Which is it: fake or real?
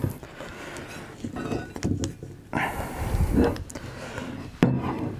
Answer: real